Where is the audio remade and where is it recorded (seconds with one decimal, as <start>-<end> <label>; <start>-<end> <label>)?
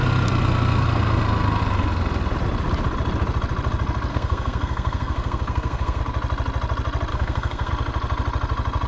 0.0-4.1 recorded; 4.1-6.0 remade; 6.0-7.1 recorded; 7.1-7.7 remade; 7.7-8.9 recorded